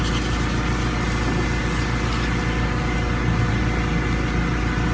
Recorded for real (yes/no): yes